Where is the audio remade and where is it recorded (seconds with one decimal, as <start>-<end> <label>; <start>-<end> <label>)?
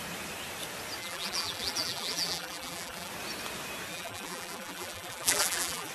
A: 0.0-1.0 recorded; 1.0-3.1 remade; 3.1-3.9 recorded; 3.9-5.9 remade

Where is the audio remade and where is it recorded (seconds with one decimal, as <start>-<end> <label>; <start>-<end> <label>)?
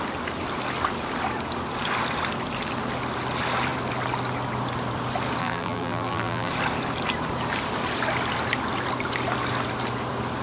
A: 0.0-5.4 recorded; 5.4-6.5 remade; 6.5-10.4 recorded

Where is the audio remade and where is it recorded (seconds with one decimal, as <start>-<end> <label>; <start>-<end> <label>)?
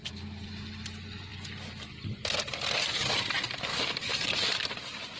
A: 0.0-3.7 recorded; 3.7-5.2 remade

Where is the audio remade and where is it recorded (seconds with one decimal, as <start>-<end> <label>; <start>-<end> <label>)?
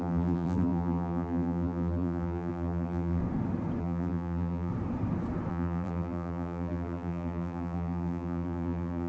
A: 0.0-3.2 remade; 3.2-3.8 recorded; 3.8-4.7 remade; 4.7-5.5 recorded; 5.5-9.1 remade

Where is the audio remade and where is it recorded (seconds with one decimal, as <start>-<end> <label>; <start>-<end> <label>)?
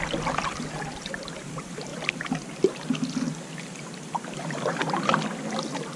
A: 0.0-1.9 remade; 1.9-3.7 recorded; 3.7-6.0 remade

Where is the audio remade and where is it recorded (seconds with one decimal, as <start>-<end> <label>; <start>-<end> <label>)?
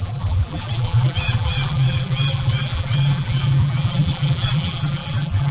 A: 0.0-5.5 remade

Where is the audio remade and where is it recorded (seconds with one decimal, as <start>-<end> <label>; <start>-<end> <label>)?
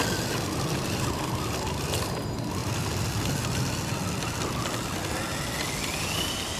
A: 0.0-2.6 recorded; 2.6-3.1 remade; 3.1-6.6 recorded